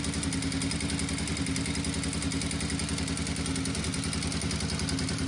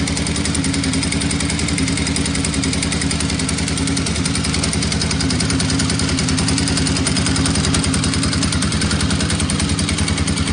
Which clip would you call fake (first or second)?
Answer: second